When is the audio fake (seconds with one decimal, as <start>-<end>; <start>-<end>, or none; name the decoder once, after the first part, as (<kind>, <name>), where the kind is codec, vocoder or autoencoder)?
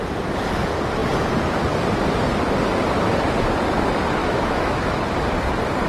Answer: 4.2-5.1 (autoencoder, DAC-VAE)